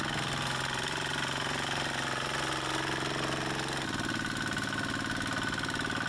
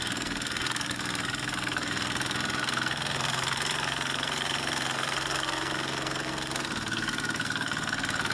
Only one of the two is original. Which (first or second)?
first